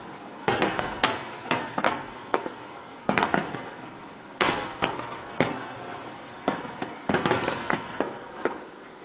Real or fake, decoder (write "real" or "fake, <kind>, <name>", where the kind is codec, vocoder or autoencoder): fake, codec, SNAC